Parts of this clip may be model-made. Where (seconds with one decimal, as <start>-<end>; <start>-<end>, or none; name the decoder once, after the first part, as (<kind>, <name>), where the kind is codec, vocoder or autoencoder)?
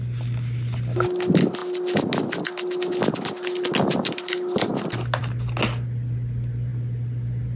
none